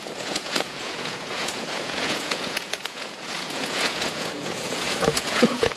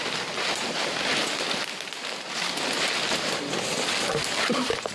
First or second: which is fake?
first